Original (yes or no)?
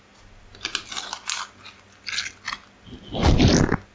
yes